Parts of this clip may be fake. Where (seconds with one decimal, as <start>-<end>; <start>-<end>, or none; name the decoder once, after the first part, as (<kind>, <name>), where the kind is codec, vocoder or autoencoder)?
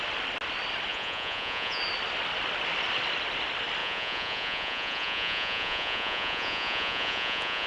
0.9-1.8 (vocoder, Vocos); 3.8-7.7